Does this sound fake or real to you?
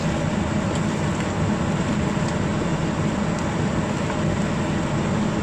real